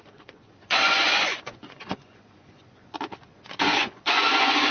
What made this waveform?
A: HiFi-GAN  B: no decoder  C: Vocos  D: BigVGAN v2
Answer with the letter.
C